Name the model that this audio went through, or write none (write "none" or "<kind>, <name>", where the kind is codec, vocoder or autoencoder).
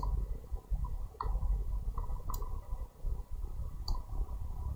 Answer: vocoder, BigVGAN v2